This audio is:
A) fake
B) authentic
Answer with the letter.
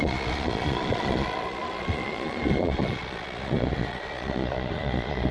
A